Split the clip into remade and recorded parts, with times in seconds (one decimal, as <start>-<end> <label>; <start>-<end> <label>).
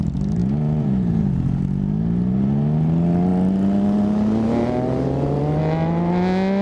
0.0-0.4 recorded; 0.4-1.6 remade; 1.6-6.6 recorded